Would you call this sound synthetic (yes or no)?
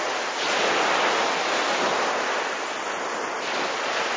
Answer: no